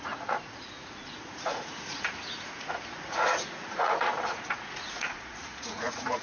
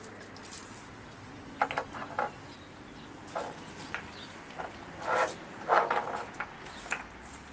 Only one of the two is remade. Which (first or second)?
first